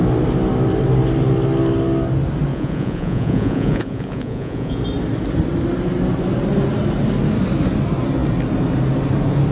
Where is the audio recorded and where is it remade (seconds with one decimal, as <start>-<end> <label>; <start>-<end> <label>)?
0.0-2.5 recorded; 2.5-4.8 remade; 4.8-9.5 recorded